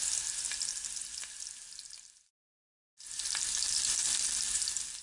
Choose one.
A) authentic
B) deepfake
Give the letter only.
A